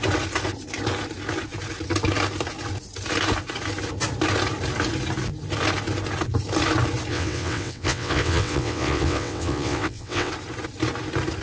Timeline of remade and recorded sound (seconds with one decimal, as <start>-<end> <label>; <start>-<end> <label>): 0.0-7.1 recorded; 7.1-10.3 remade; 10.3-11.4 recorded